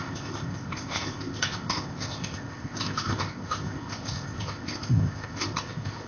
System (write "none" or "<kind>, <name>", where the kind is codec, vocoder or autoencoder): codec, ZipCodec